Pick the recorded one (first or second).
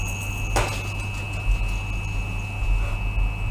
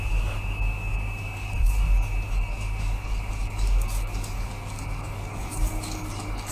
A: first